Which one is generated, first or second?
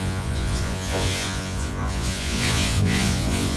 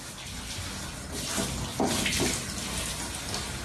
first